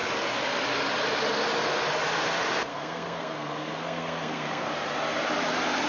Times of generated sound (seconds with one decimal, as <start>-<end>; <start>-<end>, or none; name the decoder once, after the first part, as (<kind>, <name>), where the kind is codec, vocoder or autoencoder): 2.7-4.7 (codec, SNAC)